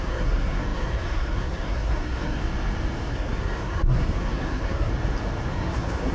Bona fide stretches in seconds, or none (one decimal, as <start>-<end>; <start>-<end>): 2.4-3.1; 4.9-5.5